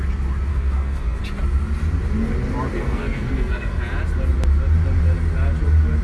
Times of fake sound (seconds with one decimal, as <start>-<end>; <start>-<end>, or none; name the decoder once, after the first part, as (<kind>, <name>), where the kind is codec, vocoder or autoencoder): 0.5-1.2 (codec, SNAC); 2.8-3.8